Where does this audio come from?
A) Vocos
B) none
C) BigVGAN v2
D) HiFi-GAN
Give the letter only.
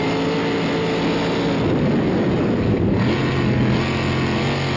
B